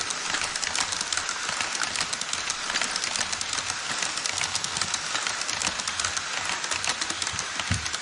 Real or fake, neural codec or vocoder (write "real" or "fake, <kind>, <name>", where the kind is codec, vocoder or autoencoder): real